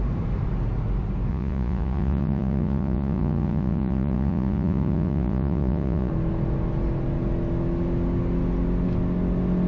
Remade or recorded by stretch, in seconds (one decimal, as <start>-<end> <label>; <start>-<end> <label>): 0.0-1.3 recorded; 1.3-6.1 remade; 6.1-9.7 recorded